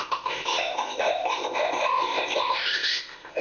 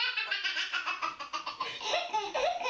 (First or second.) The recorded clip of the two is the second